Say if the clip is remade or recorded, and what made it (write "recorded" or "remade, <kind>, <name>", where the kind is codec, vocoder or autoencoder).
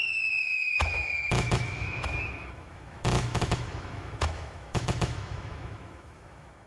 remade, autoencoder, DAC-VAE